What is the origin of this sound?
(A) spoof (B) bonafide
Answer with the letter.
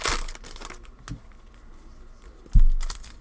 B